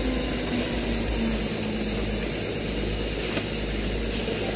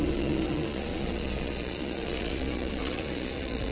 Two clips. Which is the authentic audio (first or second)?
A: first